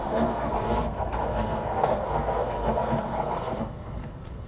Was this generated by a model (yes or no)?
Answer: yes